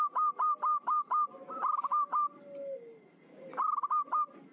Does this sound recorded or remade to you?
recorded